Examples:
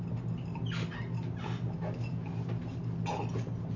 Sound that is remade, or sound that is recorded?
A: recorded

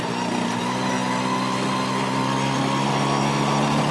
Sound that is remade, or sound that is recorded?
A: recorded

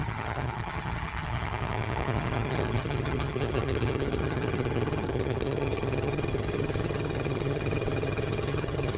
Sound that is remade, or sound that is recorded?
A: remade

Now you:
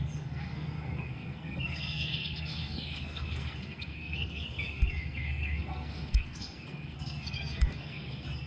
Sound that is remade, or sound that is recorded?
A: remade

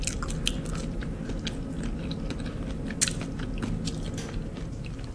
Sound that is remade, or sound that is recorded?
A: recorded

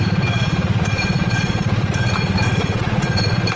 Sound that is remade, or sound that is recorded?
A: remade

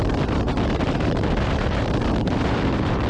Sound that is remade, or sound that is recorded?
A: recorded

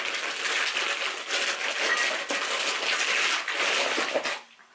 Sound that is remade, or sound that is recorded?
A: recorded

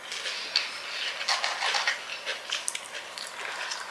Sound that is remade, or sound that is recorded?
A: recorded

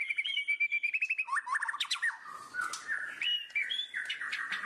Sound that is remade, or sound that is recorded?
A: remade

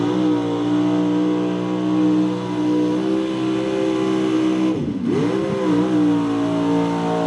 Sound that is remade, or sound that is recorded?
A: recorded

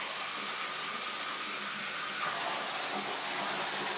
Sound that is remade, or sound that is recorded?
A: recorded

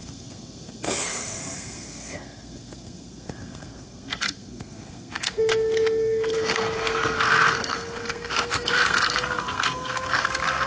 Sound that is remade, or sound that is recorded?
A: remade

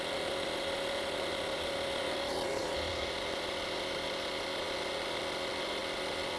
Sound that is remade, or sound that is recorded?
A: recorded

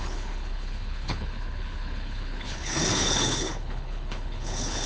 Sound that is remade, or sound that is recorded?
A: remade